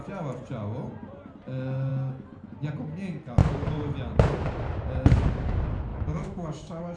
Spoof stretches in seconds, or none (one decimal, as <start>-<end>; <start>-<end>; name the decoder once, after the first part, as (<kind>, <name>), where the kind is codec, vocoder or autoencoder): 5.9-7.0 (autoencoder, DAC-VAE)